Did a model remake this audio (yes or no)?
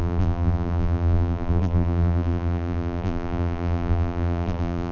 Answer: yes